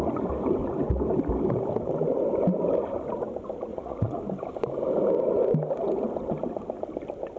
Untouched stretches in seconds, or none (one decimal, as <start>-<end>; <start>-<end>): 0.0-3.7; 4.2-7.4